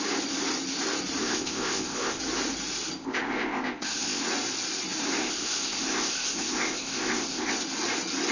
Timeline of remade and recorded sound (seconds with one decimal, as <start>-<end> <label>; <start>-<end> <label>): 0.0-1.2 recorded; 1.2-2.2 remade; 2.2-3.0 recorded; 3.0-4.2 remade; 4.2-5.2 recorded; 5.2-7.5 remade; 7.5-8.3 recorded